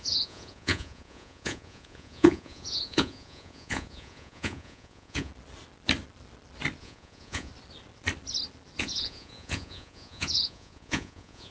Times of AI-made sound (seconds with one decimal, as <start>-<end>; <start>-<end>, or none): 0.0-5.3; 6.8-7.5; 8.8-11.5